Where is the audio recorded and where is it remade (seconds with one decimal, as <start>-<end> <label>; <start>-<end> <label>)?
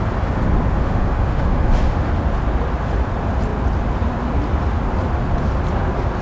0.0-0.8 recorded; 0.8-2.1 remade; 2.1-6.2 recorded